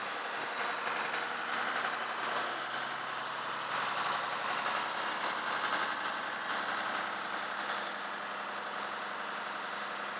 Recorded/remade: recorded